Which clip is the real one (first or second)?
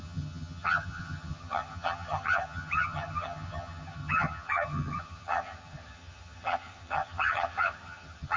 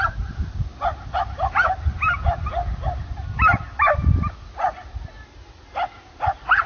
second